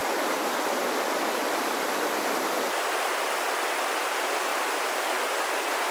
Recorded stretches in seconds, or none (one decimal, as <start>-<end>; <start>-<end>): 3.2-4.5; 5.0-5.9